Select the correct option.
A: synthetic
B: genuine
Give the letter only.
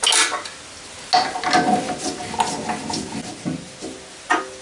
B